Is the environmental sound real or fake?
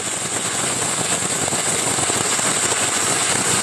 fake